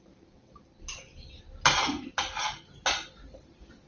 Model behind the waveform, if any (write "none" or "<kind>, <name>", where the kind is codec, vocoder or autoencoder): none